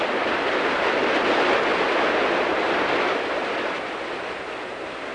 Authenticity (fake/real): real